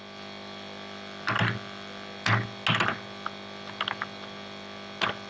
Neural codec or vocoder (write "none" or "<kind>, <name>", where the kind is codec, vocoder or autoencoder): none